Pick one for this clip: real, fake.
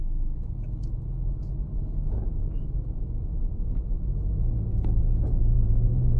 fake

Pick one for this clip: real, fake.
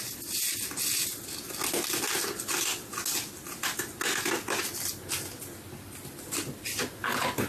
real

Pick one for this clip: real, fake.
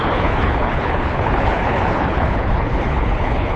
fake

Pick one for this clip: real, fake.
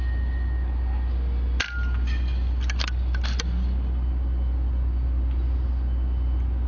real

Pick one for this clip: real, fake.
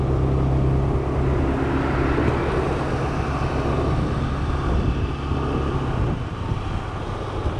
real